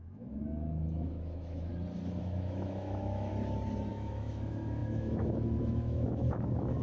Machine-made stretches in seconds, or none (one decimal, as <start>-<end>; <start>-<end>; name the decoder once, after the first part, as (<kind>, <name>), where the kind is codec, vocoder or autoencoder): 0.0-1.7 (autoencoder, DAC-VAE); 2.2-3.3; 3.9-6.8